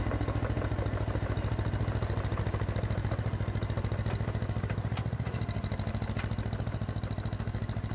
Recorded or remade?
recorded